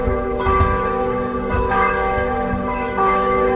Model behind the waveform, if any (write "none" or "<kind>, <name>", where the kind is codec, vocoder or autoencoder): autoencoder, DAC-VAE